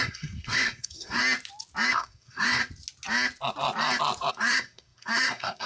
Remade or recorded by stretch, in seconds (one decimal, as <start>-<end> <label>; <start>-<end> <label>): 0.0-1.2 remade; 1.2-1.9 recorded; 1.9-2.6 remade; 2.6-4.3 recorded; 4.3-5.7 remade